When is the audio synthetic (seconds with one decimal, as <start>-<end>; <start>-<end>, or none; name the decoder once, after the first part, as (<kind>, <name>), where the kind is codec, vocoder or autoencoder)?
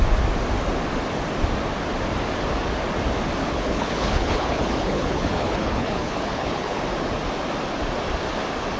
3.4-6.8 (codec, HILCodec)